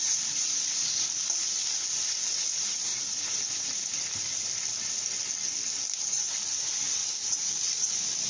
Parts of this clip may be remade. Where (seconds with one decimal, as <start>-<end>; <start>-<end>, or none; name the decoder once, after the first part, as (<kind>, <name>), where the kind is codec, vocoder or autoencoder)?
2.9-3.8 (vocoder, Vocos); 7.0-7.5